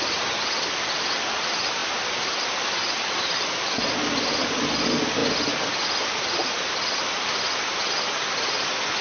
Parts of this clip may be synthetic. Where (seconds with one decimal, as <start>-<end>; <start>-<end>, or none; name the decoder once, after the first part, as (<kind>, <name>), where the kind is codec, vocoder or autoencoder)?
none